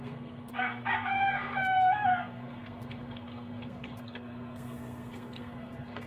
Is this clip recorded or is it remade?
remade